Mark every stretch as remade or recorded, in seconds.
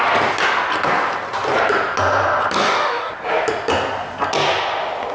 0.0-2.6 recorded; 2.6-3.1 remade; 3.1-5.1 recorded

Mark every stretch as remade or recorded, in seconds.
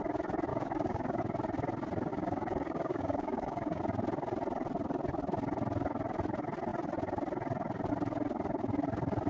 0.0-0.5 recorded; 0.5-1.2 remade; 1.2-2.1 recorded; 2.1-3.8 remade; 3.8-9.3 recorded